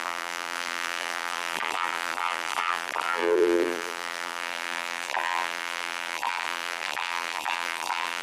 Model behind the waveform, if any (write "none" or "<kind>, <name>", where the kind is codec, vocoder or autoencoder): vocoder, BigVGAN v2